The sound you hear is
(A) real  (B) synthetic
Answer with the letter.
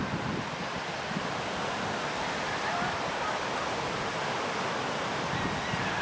A